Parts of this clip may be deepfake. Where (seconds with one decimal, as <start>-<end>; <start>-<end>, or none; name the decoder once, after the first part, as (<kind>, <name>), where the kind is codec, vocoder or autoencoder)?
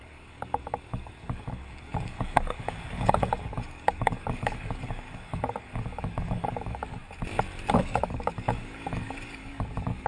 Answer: 0.0-7.0 (codec, DAC); 7.7-10.1